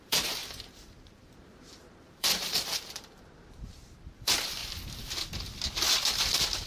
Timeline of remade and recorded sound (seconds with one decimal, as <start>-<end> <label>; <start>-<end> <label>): 0.0-4.6 remade; 4.6-6.7 recorded